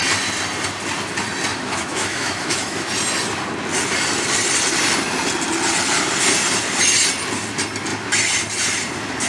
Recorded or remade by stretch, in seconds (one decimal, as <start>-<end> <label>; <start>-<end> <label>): 0.0-1.5 recorded; 1.5-2.9 remade; 2.9-9.3 recorded